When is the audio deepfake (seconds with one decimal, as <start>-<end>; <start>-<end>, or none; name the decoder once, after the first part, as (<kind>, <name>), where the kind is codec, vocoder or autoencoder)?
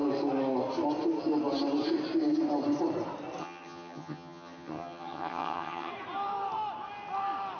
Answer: 3.4-5.9 (vocoder, HiFi-GAN)